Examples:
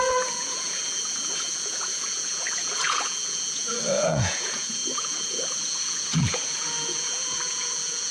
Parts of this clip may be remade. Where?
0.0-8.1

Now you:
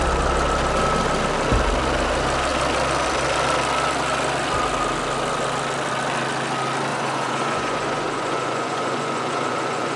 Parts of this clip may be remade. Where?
6.9-10.0

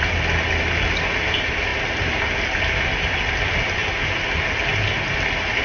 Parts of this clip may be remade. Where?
none

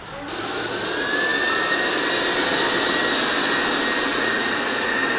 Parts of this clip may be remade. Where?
4.1-5.2